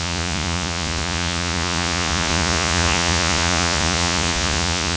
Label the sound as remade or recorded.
remade